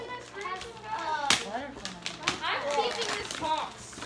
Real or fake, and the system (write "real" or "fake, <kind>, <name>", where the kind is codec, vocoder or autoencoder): real